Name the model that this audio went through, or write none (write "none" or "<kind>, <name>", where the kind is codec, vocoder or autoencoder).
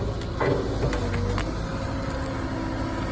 none